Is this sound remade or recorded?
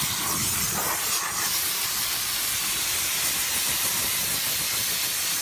recorded